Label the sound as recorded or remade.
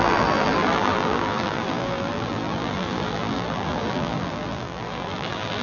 remade